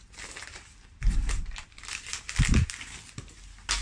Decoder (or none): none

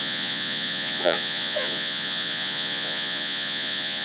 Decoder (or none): vocoder, Vocos